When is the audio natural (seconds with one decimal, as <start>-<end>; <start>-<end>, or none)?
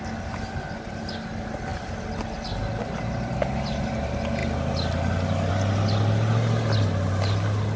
0.0-7.8